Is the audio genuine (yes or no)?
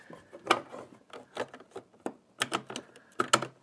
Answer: yes